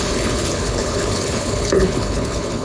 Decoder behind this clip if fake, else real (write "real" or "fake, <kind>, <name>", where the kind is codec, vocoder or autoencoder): fake, codec, HILCodec